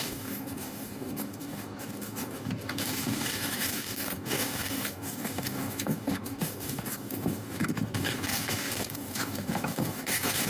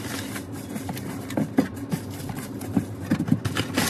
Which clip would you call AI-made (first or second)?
first